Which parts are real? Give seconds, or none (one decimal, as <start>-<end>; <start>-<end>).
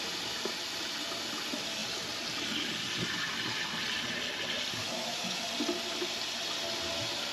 0.0-4.8; 5.4-7.3